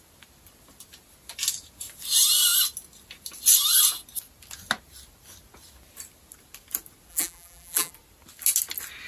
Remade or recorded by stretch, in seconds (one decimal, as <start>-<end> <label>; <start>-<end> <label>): 0.0-7.1 recorded; 7.1-7.9 remade; 7.9-9.1 recorded